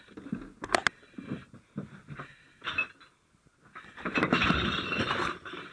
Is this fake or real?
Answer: real